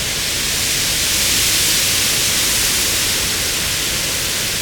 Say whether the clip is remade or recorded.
recorded